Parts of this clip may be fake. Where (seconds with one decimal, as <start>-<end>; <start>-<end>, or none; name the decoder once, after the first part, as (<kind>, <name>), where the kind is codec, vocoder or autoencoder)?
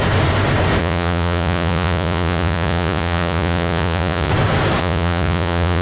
0.8-4.3 (vocoder, Vocos); 4.8-5.8